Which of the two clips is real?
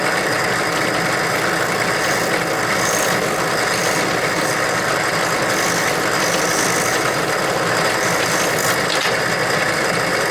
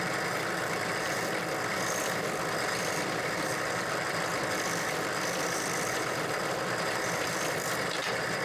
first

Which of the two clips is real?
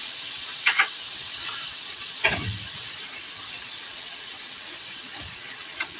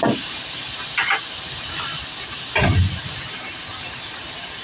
second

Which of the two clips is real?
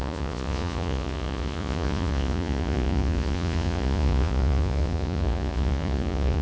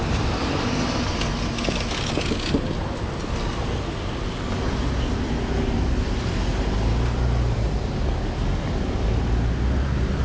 second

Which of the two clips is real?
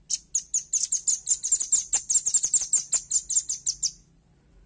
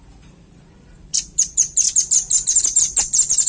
first